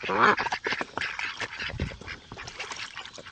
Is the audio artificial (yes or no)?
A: yes